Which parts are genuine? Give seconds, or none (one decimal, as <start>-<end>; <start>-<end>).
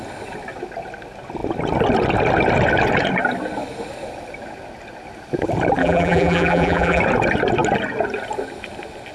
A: 0.0-5.8; 7.0-9.1